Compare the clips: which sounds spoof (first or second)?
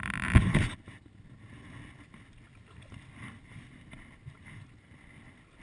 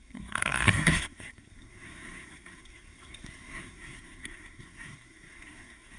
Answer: second